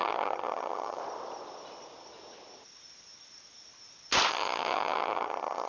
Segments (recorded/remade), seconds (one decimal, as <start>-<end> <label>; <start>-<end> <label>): 0.0-1.0 remade; 1.0-4.3 recorded; 4.3-5.7 remade

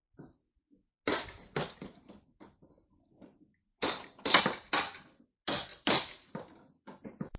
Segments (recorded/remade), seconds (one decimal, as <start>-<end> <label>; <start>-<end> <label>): 0.0-7.4 recorded

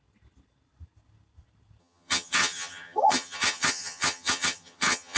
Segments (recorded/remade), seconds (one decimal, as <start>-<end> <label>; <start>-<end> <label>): 0.0-1.8 recorded; 1.8-5.2 remade

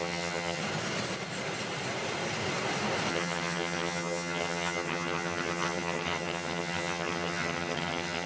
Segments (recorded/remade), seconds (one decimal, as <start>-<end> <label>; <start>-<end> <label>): 0.0-0.6 remade; 0.6-3.1 recorded; 3.1-8.3 remade